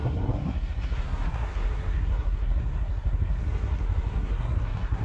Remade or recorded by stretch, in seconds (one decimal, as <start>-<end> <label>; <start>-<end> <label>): 0.0-5.0 remade